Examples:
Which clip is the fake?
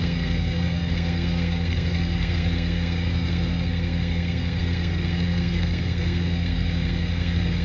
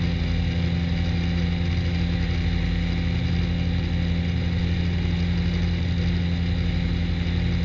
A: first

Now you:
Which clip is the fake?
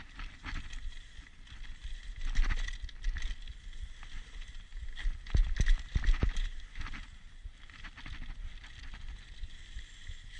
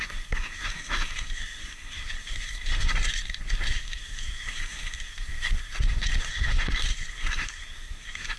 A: second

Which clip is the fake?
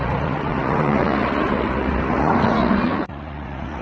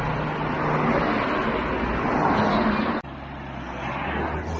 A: first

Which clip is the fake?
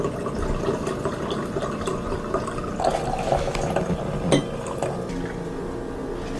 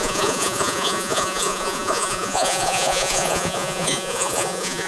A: second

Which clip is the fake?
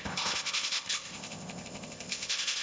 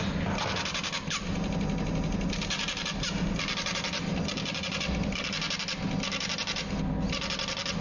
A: first